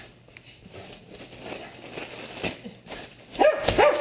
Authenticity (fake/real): real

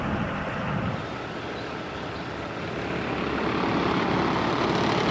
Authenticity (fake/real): real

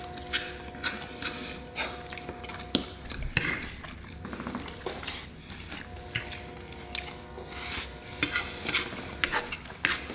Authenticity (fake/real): real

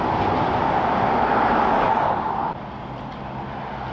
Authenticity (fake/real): real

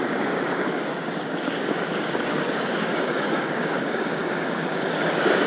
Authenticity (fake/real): fake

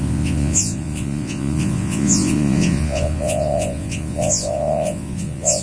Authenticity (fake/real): fake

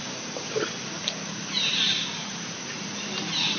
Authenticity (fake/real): real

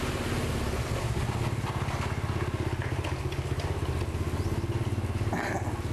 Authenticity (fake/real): real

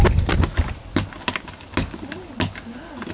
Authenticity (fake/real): real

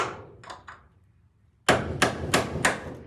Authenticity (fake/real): real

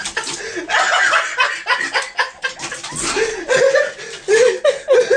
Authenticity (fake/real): real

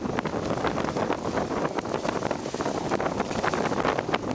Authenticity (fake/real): real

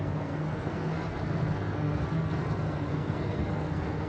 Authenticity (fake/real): fake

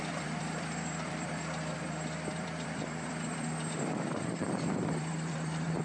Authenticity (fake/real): fake